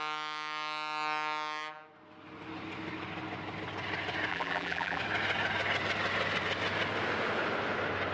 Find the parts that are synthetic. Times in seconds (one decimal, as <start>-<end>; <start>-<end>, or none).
4.3-5.0